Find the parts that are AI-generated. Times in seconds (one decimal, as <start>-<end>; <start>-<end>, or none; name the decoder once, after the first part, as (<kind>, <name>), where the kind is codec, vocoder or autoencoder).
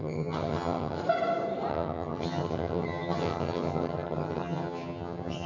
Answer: 0.0-1.0 (vocoder, HiFi-GAN); 1.7-5.5